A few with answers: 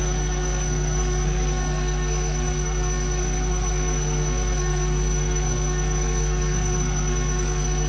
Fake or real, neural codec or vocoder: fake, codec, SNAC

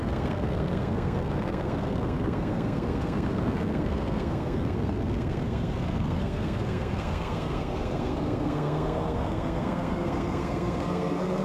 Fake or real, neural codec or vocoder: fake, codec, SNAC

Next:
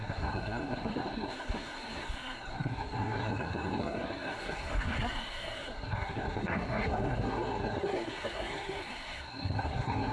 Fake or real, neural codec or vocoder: fake, codec, SNAC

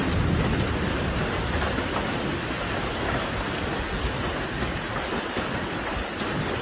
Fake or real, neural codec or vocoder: real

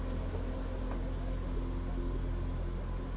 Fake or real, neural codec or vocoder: real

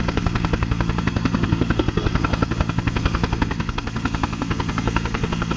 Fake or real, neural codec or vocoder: fake, codec, SNAC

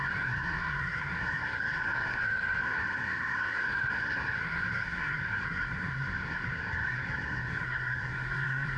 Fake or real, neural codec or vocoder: fake, codec, SNAC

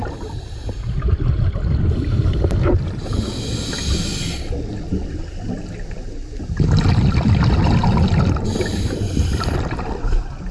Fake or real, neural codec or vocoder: real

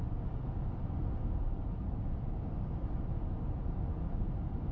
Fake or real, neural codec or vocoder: real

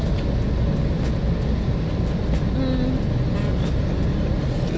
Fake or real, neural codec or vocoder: real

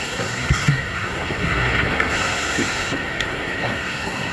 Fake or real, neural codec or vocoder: fake, codec, SNAC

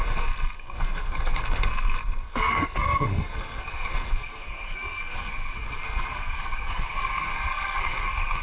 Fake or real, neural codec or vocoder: fake, codec, SNAC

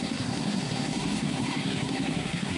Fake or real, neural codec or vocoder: fake, codec, SNAC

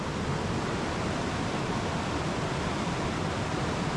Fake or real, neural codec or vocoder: real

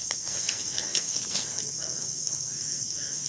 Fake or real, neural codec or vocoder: fake, codec, SNAC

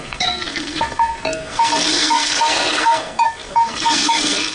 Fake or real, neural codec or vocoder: fake, codec, SNAC